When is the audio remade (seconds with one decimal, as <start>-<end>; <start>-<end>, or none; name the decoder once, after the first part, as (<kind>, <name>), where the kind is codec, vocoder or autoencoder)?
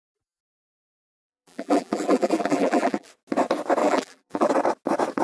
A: 0.0-3.1 (vocoder, BigVGAN v2); 3.8-4.5